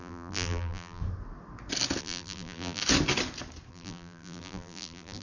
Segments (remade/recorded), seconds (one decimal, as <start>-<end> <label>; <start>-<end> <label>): 0.0-1.0 remade; 1.0-2.0 recorded; 2.0-2.8 remade; 2.8-3.7 recorded; 3.7-5.2 remade